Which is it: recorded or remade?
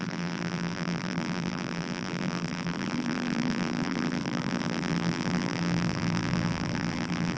remade